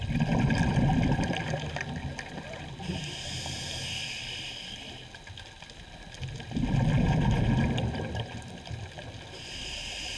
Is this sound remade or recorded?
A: recorded